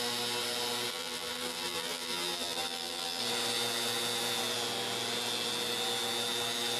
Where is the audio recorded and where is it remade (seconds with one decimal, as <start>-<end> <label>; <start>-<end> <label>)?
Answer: 0.0-0.9 recorded; 0.9-3.2 remade; 3.2-6.8 recorded